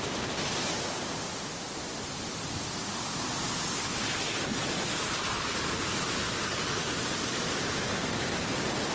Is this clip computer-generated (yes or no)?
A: no